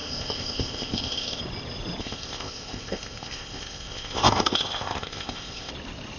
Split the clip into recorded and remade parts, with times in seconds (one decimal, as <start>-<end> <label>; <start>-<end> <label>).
0.0-1.4 remade; 1.4-2.0 recorded; 2.0-5.7 remade; 5.7-6.2 recorded